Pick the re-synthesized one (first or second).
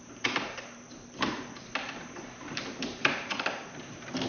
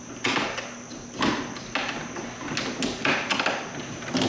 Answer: first